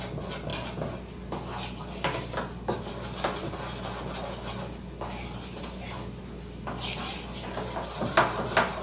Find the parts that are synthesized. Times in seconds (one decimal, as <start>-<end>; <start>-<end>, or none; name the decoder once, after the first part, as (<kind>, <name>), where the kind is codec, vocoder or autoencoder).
none

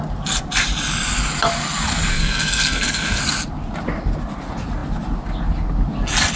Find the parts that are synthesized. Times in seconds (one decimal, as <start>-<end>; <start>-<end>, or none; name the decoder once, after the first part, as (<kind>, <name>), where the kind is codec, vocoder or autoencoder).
2.1-3.2 (codec, SNAC)

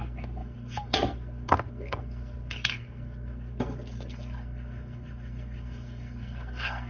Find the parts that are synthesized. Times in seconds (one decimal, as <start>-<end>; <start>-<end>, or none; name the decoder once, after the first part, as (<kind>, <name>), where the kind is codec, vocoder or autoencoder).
0.0-6.9 (codec, SNAC)

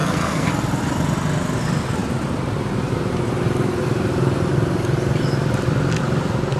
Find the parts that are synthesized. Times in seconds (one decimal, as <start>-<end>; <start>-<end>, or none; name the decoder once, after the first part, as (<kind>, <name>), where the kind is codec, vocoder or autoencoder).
0.0-0.5 (codec, SNAC)

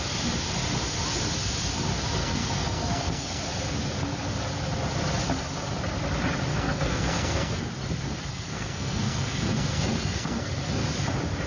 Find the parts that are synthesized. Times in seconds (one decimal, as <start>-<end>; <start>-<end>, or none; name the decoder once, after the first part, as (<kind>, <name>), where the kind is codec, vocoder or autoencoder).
2.2-3.4 (codec, SNAC); 6.5-7.6; 8.3-10.6